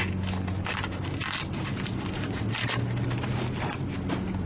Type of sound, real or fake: real